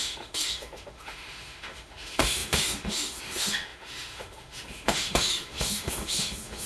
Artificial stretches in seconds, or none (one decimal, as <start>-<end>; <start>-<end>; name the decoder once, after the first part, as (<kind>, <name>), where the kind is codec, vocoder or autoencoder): 0.0-6.7 (autoencoder, DAC-VAE)